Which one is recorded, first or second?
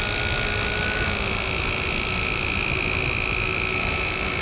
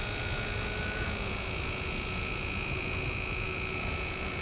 first